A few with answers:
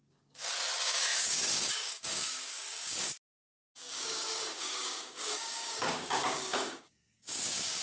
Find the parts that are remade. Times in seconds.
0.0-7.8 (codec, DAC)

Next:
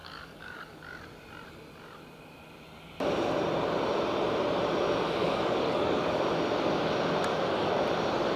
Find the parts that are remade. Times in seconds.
0.0-0.8 (codec, DAC); 5.2-6.2; 7.3-7.8

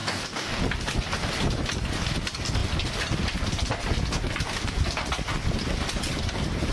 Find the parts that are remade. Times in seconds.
0.0-0.6 (codec, DAC)

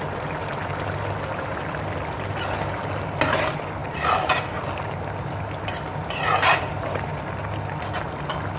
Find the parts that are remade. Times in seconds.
none